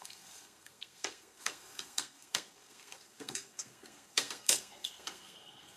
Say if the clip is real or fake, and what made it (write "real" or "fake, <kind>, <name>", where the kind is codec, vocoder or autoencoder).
fake, codec, SNAC